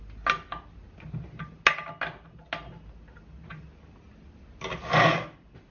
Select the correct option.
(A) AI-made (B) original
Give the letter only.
B